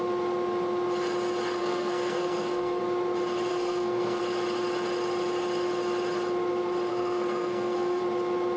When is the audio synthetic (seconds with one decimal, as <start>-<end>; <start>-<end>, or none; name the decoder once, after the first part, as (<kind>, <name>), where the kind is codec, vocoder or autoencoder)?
1.6-2.8 (codec, SNAC); 3.5-4.2; 6.9-8.0